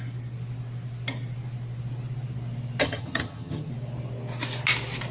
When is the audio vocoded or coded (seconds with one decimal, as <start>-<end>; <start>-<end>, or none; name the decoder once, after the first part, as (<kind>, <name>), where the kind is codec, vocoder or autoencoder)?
2.8-3.7 (vocoder, HiFi-GAN)